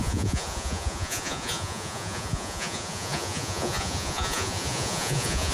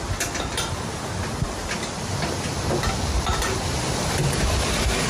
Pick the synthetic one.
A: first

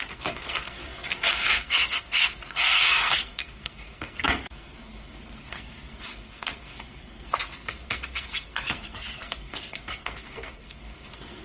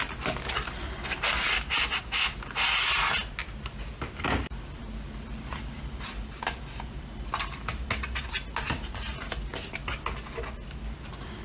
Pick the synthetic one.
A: first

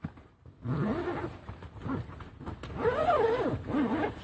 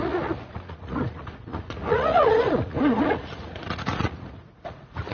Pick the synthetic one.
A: second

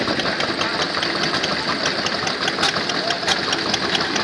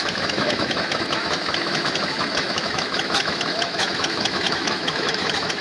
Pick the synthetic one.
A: second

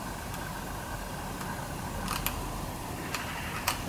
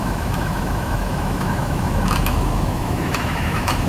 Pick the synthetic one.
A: second